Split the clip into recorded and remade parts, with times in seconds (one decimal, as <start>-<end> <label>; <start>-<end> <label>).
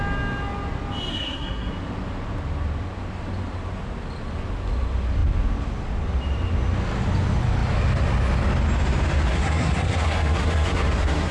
0.0-1.1 recorded; 1.1-1.7 remade; 1.7-9.3 recorded; 9.3-11.3 remade